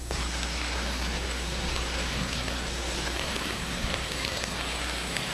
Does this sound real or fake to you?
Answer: fake